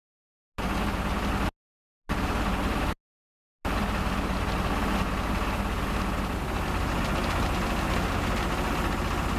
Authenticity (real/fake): real